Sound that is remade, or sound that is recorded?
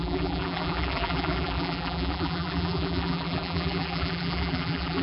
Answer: remade